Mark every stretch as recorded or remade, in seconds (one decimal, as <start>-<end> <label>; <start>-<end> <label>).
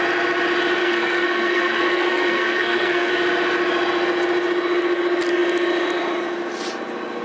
0.0-0.8 recorded; 0.8-3.1 remade; 3.1-7.2 recorded